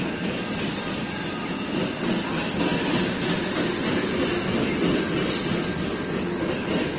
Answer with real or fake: real